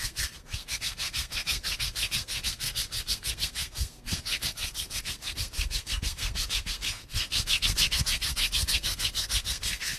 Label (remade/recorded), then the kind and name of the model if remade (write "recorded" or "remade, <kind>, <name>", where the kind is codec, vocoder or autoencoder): remade, codec, SNAC